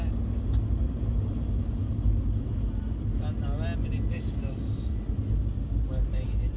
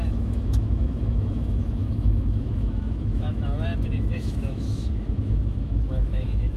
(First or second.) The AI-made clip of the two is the second